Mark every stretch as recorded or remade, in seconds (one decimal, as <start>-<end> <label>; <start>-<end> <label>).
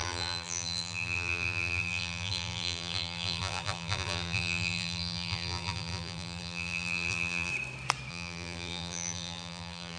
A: 0.0-7.5 remade; 7.5-8.1 recorded; 8.1-10.0 remade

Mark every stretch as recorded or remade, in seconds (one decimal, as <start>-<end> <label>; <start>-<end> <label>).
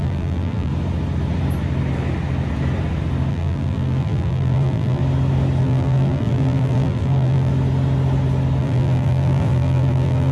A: 0.0-0.7 remade; 0.7-3.3 recorded; 3.3-5.0 remade; 5.0-5.6 recorded; 5.6-7.5 remade; 7.5-8.6 recorded; 8.6-10.3 remade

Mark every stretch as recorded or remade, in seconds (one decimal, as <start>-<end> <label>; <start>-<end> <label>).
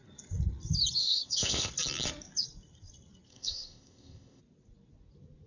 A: 0.0-1.0 recorded; 1.0-1.7 remade; 1.7-3.3 recorded; 3.3-4.4 remade; 4.4-5.5 recorded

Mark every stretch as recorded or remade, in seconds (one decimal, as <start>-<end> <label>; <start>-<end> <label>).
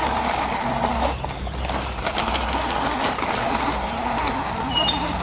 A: 0.0-5.2 recorded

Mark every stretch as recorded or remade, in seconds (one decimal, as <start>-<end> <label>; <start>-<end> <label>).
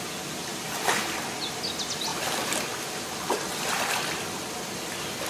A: 0.0-5.3 recorded